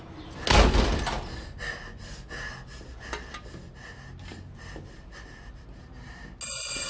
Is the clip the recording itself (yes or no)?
yes